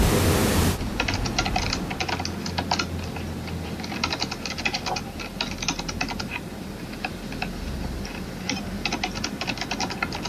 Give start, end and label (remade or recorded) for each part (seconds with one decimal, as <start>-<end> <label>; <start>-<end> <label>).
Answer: 0.0-10.3 recorded